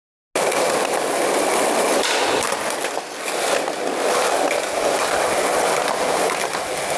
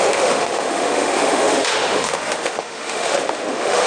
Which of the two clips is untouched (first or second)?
first